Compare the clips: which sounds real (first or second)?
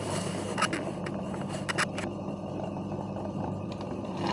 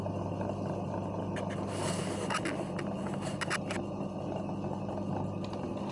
second